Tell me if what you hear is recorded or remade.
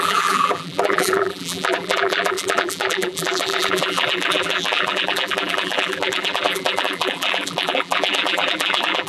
remade